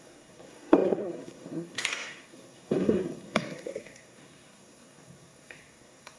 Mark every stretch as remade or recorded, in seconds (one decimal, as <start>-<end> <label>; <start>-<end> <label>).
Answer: 0.0-6.2 remade